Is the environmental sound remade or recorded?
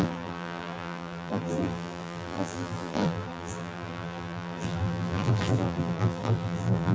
remade